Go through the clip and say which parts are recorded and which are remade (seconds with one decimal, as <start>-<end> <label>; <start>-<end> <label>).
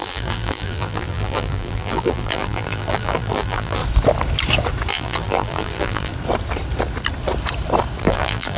0.0-3.8 remade; 3.8-4.9 recorded; 4.9-6.1 remade; 6.1-8.0 recorded; 8.0-8.6 remade